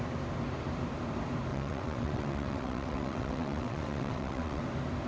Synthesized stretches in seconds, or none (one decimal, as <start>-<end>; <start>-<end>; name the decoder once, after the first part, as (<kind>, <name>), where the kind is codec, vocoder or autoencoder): 1.5-4.6 (vocoder, WaveNeXt)